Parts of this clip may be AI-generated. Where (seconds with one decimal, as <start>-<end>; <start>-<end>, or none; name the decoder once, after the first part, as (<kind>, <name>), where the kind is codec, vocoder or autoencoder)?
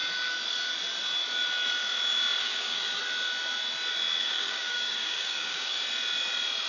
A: 2.4-3.0 (codec, DAC); 4.2-5.8